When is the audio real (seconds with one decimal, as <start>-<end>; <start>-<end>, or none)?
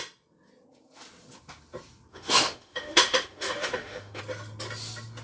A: 0.0-2.1; 4.2-5.2